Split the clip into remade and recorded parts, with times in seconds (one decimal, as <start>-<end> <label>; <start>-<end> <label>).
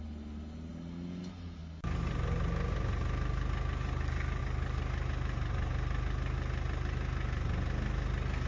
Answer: 0.0-8.5 recorded